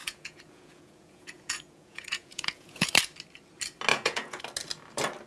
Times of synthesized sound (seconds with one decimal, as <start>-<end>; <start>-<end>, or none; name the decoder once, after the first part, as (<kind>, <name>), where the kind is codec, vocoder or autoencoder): 0.0-2.9 (vocoder, Vocos); 3.9-4.4